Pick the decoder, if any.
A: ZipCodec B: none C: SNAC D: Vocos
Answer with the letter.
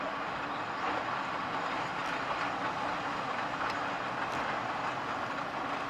B